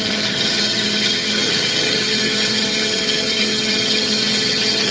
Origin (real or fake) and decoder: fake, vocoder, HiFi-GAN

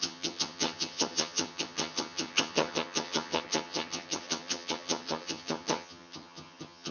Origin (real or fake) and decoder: fake, vocoder, HiFi-GAN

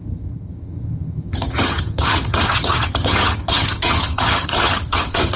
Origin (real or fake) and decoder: fake, vocoder, HiFi-GAN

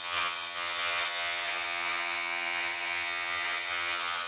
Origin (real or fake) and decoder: fake, vocoder, HiFi-GAN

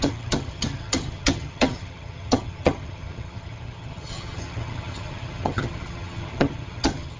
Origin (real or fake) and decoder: fake, vocoder, HiFi-GAN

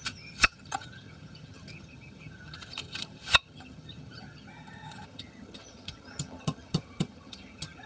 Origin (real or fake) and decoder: fake, vocoder, HiFi-GAN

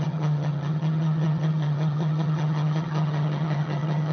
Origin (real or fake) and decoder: fake, vocoder, HiFi-GAN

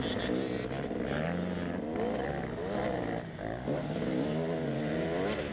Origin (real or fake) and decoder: real